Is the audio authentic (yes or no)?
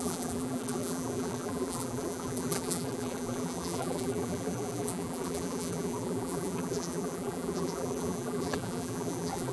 no